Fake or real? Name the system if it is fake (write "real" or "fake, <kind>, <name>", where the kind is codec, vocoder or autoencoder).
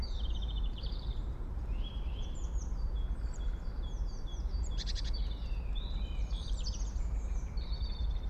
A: fake, vocoder, BigVGAN v2